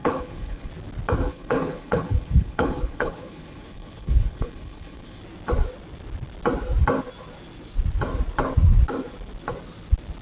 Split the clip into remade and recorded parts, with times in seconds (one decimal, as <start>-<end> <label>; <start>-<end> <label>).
0.0-0.7 remade; 0.7-1.3 recorded; 1.3-5.2 remade; 5.2-10.2 recorded